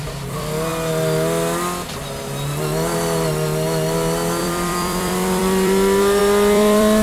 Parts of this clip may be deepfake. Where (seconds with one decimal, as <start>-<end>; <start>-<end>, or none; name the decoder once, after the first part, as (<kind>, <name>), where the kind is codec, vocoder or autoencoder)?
0.0-0.7 (vocoder, BigVGAN v2); 4.4-7.0